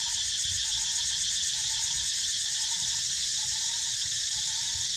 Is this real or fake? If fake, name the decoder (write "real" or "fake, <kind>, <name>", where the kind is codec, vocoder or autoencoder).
fake, vocoder, BigVGAN v2